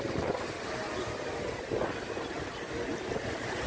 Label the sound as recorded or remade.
recorded